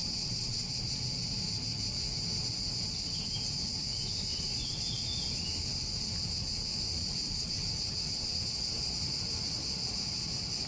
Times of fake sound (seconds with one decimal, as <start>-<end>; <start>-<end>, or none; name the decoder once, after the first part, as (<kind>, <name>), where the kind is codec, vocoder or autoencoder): 0.0-0.7 (vocoder, WaveNeXt); 4.3-5.0; 7.0-8.9